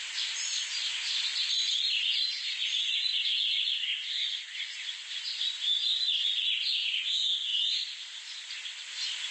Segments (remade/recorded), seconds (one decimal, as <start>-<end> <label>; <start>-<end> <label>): 0.0-9.3 recorded